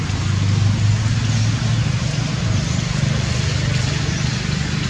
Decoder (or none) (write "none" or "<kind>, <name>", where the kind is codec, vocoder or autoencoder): none